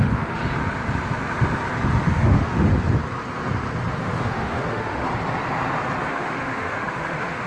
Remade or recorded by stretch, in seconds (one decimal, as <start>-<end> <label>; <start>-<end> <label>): 0.0-0.4 remade; 0.4-2.1 recorded; 2.1-2.7 remade; 2.7-4.0 recorded; 4.0-5.1 remade; 5.1-6.1 recorded; 6.1-7.5 remade

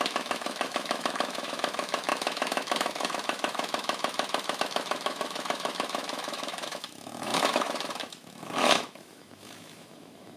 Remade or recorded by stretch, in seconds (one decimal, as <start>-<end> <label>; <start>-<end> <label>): 0.0-10.4 remade

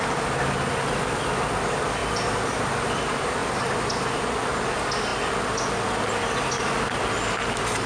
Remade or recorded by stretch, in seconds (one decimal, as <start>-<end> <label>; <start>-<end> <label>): 0.0-7.9 recorded

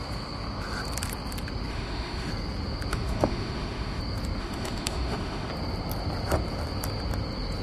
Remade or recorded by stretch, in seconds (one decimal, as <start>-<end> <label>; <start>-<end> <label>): 0.0-1.7 recorded; 1.7-2.3 remade; 2.3-2.9 recorded; 2.9-4.0 remade; 4.0-4.4 recorded; 4.4-5.5 remade; 5.5-7.6 recorded

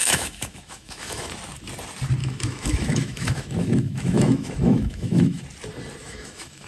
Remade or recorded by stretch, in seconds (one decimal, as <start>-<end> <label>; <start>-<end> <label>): 0.0-1.3 remade; 1.3-2.2 recorded; 2.2-5.4 remade; 5.4-6.0 recorded; 6.0-6.7 remade